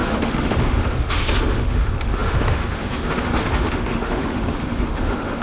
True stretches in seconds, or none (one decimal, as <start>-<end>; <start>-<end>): none